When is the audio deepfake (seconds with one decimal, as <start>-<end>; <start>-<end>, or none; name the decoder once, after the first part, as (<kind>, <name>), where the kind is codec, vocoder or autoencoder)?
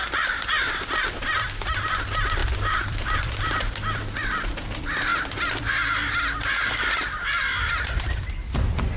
1.1-9.0 (vocoder, BigVGAN v2)